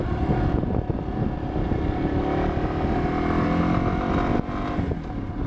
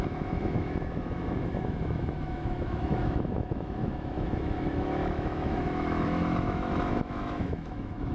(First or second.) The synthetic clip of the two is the second